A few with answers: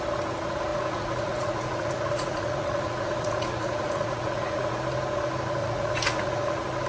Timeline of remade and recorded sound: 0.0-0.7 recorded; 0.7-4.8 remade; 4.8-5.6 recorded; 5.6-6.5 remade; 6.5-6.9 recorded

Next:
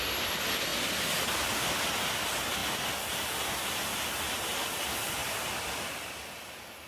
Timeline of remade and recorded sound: 0.0-6.9 recorded

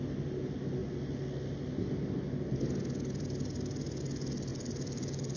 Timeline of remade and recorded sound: 0.0-4.5 recorded; 4.5-5.4 remade

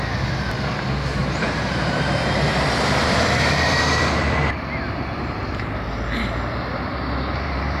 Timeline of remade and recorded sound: 0.0-1.2 recorded; 1.2-4.0 remade; 4.0-7.3 recorded; 7.3-7.8 remade

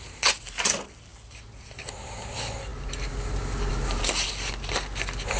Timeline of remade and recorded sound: 0.0-5.4 recorded

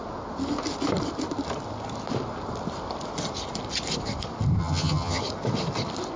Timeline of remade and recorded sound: 0.0-4.6 recorded; 4.6-5.2 remade; 5.2-6.2 recorded